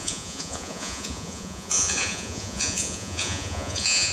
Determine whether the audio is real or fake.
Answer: fake